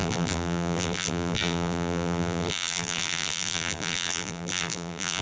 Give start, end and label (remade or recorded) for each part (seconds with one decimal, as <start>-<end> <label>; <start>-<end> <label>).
0.0-5.2 remade